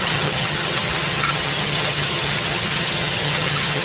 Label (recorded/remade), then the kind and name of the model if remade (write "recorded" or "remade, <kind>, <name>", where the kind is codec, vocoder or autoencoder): remade, vocoder, HiFi-GAN